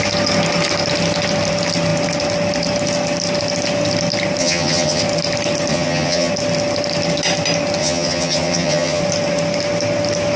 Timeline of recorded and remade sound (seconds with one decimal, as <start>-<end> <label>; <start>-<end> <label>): 0.0-4.4 recorded; 4.4-5.0 remade; 5.0-5.7 recorded; 5.7-6.3 remade; 6.3-7.8 recorded; 7.8-9.0 remade; 9.0-10.4 recorded